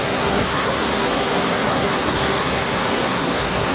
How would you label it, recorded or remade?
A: remade